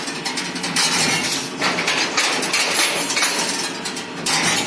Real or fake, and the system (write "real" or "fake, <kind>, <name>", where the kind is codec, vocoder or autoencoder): real